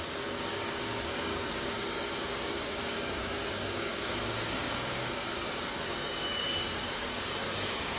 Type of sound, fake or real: fake